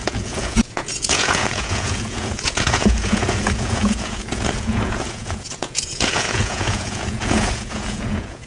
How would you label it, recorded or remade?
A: remade